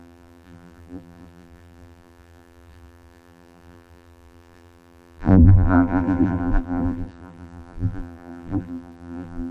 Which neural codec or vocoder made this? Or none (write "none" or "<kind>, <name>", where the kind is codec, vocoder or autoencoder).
vocoder, BigVGAN v2